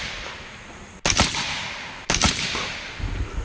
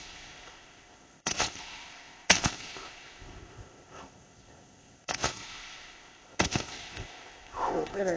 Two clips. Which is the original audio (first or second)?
first